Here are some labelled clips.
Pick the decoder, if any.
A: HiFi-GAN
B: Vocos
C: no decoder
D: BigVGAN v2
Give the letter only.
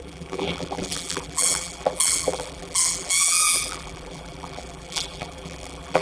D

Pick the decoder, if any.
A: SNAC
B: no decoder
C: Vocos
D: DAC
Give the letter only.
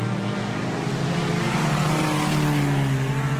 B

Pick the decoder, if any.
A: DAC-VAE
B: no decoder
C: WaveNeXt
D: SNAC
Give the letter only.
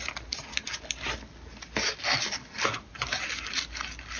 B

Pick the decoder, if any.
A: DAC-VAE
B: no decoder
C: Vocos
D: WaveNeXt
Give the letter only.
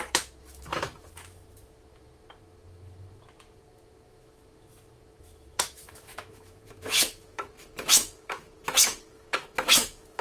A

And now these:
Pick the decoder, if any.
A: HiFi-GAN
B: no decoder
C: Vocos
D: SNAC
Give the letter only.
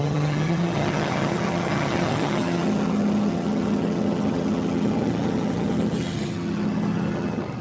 A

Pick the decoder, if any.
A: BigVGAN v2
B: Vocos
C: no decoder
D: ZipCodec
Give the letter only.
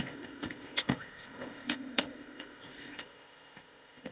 D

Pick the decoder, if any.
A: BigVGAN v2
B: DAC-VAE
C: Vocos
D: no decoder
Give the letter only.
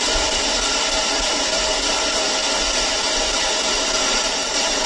D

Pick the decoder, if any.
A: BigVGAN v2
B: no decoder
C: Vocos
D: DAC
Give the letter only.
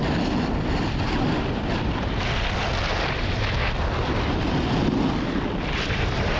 B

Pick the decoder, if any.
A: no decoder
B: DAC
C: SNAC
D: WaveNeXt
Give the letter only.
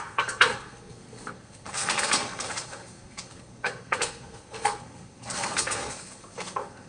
C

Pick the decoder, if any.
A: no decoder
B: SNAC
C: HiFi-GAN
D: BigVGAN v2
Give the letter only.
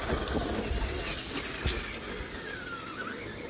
A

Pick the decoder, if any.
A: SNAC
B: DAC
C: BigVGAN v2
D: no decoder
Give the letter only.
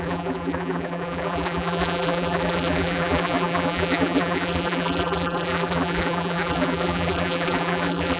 C